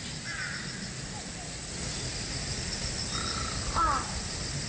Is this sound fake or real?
real